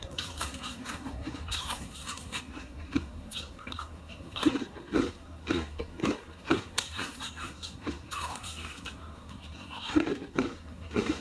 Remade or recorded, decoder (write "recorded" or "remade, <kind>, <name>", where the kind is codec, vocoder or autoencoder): remade, codec, SNAC